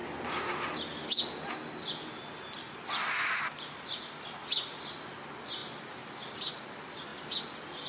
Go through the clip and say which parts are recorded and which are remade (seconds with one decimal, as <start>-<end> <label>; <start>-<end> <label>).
0.0-7.9 recorded